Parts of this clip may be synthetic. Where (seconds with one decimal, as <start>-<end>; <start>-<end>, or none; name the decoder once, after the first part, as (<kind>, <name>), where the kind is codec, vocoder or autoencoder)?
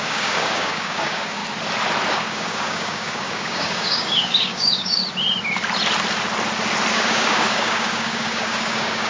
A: 0.0-1.4 (codec, DAC); 2.1-5.0; 6.9-9.1